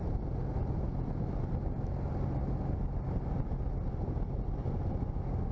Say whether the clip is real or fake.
real